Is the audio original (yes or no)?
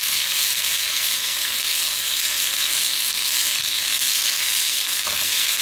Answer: no